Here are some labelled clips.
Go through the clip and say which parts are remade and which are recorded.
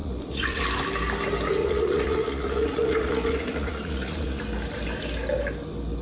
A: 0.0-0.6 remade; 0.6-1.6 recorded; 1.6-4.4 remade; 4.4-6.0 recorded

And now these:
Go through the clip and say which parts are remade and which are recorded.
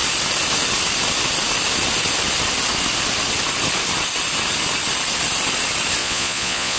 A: 0.0-6.0 recorded; 6.0-6.8 remade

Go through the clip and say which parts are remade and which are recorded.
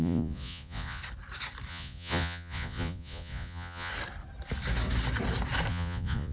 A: 0.0-1.0 remade; 1.0-1.7 recorded; 1.7-3.9 remade; 3.9-5.7 recorded; 5.7-6.3 remade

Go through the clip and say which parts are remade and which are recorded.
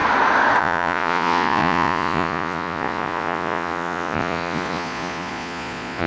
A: 0.0-0.6 recorded; 0.6-6.1 remade